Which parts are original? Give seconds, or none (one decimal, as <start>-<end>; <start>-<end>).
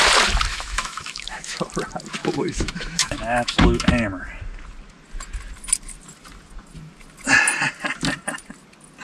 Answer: 0.0-0.5; 1.6-2.2; 3.9-9.0